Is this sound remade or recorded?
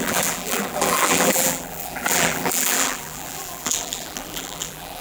remade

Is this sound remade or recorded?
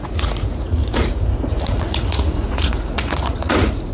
remade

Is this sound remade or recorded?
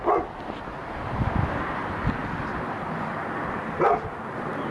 recorded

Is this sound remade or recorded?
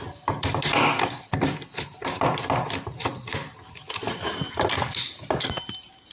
recorded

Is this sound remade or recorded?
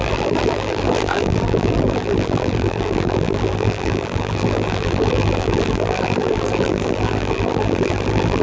remade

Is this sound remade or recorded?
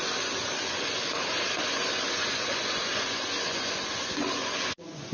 remade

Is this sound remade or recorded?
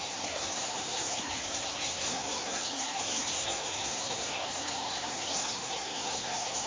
remade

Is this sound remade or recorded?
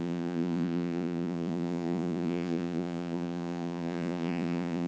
remade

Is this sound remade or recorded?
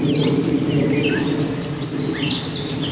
recorded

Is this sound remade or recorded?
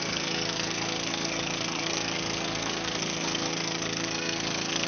remade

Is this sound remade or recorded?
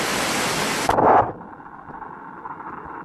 recorded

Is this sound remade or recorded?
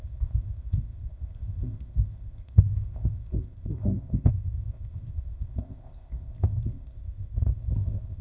remade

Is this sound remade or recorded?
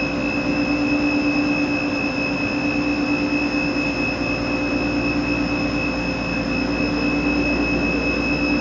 recorded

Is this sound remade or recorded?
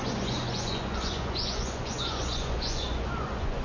remade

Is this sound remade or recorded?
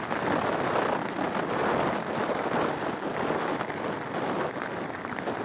recorded